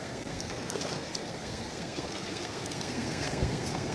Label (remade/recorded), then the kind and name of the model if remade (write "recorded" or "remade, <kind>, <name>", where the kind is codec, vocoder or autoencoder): remade, codec, SNAC